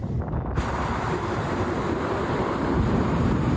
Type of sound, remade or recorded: remade